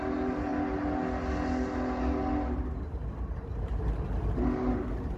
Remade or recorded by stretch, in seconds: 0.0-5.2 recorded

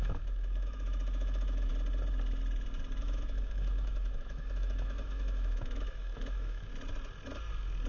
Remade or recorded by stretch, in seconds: 0.0-1.7 remade; 1.7-3.0 recorded; 3.0-6.7 remade; 6.7-7.9 recorded

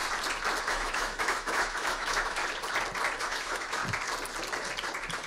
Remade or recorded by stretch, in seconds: 0.0-0.6 recorded; 0.6-2.4 remade; 2.4-3.2 recorded; 3.2-3.8 remade; 3.8-5.3 recorded

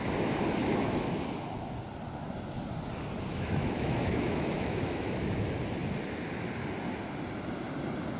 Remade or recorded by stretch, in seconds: 0.0-0.6 recorded; 0.6-1.2 remade; 1.2-3.3 recorded; 3.3-5.2 remade; 5.2-8.2 recorded

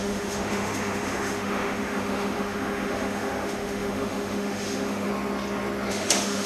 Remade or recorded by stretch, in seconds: 0.0-5.1 remade; 5.1-5.9 recorded; 5.9-6.5 remade

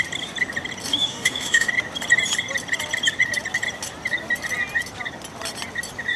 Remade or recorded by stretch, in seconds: 0.0-0.9 recorded; 0.9-1.7 remade; 1.7-6.2 recorded

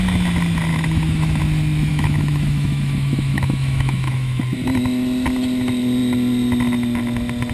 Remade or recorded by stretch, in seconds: 0.0-0.7 recorded; 0.7-1.4 remade; 1.4-1.9 recorded; 1.9-4.4 remade; 4.4-7.5 recorded

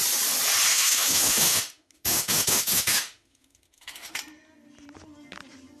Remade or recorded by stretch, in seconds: 0.0-0.7 recorded; 0.7-4.2 remade; 4.2-5.8 recorded